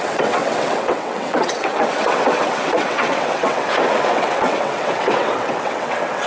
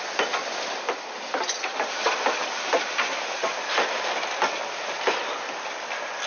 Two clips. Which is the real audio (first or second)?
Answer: second